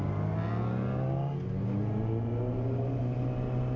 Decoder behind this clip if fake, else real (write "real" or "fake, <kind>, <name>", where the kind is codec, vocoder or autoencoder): real